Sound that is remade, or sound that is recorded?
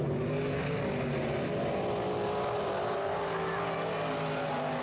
recorded